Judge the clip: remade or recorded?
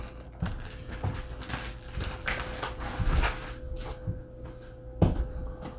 recorded